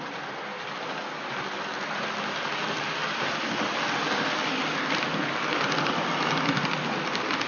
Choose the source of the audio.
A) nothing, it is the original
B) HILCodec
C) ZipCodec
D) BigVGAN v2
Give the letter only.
A